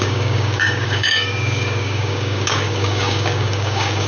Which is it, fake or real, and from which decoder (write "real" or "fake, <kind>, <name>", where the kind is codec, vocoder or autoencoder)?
fake, codec, DAC